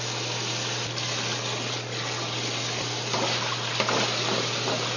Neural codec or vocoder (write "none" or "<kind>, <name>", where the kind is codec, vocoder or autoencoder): none